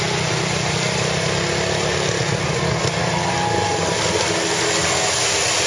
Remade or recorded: recorded